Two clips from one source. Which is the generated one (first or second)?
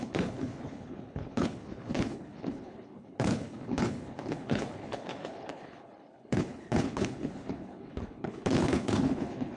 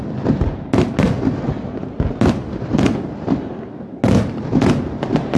first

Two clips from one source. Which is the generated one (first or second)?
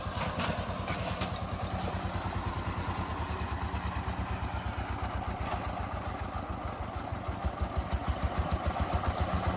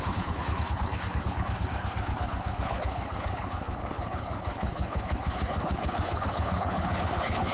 second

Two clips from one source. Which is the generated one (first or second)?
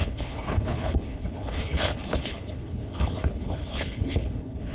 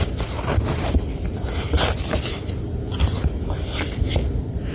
first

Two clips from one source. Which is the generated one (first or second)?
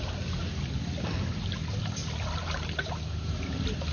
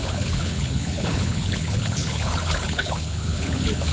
second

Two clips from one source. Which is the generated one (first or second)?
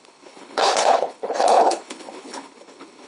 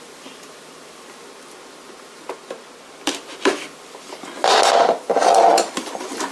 first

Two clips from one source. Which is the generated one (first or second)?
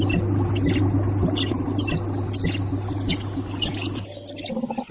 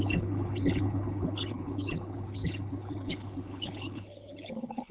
second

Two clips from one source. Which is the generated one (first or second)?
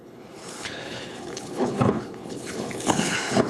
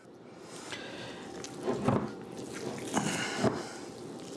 first